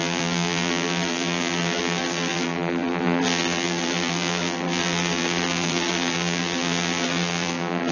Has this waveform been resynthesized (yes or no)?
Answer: yes